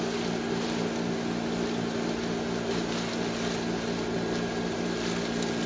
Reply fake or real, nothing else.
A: real